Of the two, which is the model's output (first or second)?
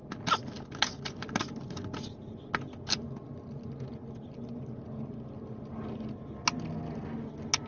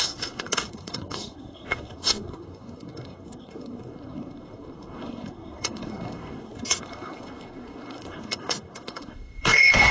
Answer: second